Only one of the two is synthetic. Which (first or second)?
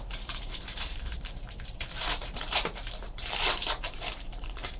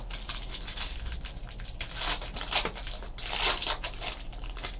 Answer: first